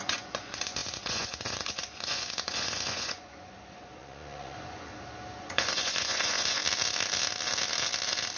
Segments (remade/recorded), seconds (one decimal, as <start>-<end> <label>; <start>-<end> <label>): 0.0-4.9 remade; 4.9-5.4 recorded; 5.4-6.6 remade; 6.6-8.4 recorded